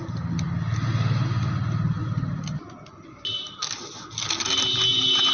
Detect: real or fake real